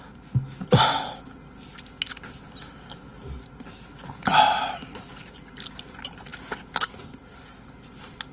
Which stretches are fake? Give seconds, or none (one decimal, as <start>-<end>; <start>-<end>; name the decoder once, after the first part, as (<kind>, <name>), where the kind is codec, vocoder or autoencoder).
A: none